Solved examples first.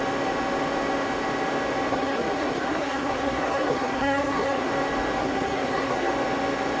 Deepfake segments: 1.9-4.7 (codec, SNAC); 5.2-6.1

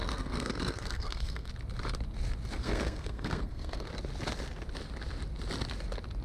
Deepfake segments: 0.0-1.5 (codec, SNAC); 2.6-3.9

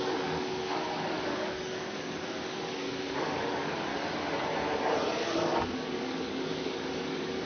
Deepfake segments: 0.0-3.9 (codec, DAC); 5.2-7.5

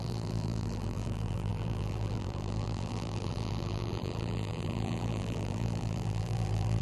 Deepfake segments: 0.0-6.8 (vocoder, BigVGAN v2)

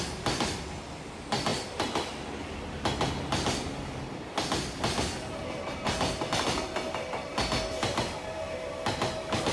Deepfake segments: none